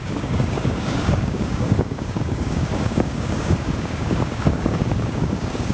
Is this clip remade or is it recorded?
remade